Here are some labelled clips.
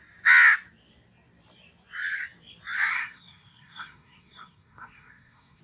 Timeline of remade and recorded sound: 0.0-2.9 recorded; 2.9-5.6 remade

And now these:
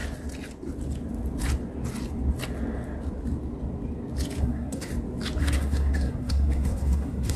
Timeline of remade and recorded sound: 0.0-4.4 recorded; 4.4-4.9 remade; 4.9-5.4 recorded; 5.4-7.4 remade

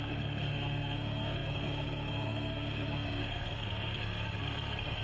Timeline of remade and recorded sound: 0.0-5.0 remade

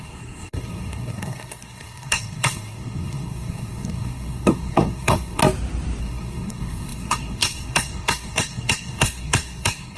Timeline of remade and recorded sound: 0.0-5.4 remade; 5.4-6.0 recorded; 6.0-10.0 remade